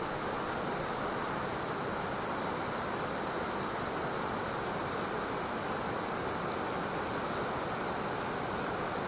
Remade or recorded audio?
recorded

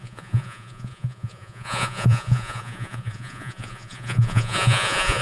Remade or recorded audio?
remade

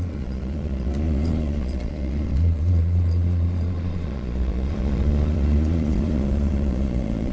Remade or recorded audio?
remade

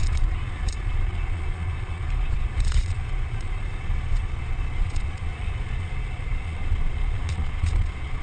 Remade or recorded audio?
remade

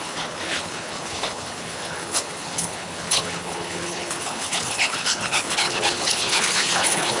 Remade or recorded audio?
remade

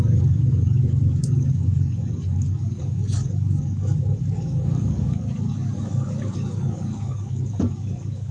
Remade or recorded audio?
remade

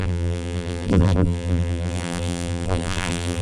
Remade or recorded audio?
remade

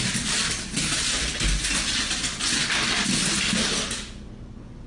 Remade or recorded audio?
recorded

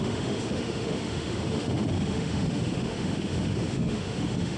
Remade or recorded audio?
remade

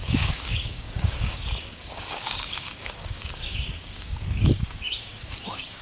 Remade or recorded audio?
remade